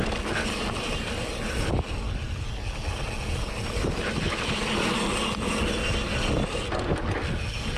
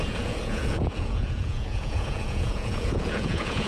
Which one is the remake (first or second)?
second